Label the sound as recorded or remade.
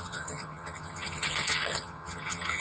remade